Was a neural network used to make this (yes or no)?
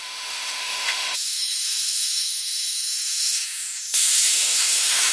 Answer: yes